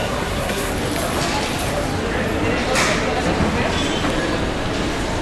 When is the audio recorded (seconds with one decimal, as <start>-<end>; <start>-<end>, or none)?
0.7-5.2